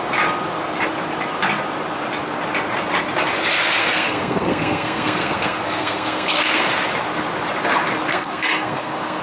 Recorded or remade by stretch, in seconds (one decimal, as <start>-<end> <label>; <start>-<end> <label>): 0.0-3.8 recorded; 3.8-6.7 remade; 6.7-8.1 recorded; 8.1-9.2 remade